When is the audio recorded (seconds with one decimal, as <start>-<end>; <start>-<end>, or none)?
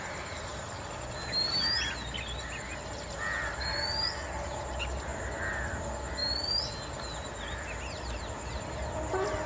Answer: 0.0-9.5